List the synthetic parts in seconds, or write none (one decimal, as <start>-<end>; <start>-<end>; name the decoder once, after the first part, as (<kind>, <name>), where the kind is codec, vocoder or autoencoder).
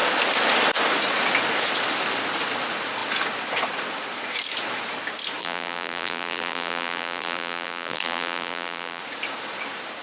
5.4-9.0 (vocoder, BigVGAN v2)